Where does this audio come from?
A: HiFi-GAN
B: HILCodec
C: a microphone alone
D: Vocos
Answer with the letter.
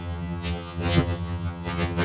A